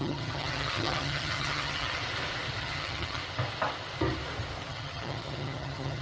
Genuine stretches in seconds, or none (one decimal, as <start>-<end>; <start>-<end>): 2.0-2.6; 3.2-4.7